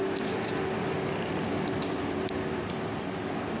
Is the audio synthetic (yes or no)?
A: no